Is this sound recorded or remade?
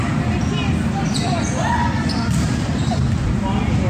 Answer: recorded